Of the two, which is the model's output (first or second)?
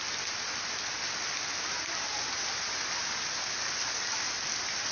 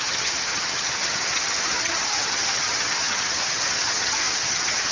second